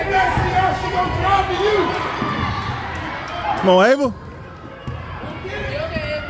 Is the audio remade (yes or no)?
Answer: no